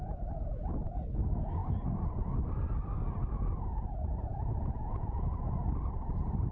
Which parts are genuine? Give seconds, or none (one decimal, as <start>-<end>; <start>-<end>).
0.0-4.3; 5.6-6.5